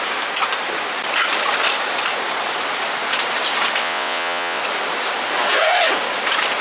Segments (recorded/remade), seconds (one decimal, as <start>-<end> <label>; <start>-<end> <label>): 0.0-3.8 recorded; 3.8-4.6 remade; 4.6-6.6 recorded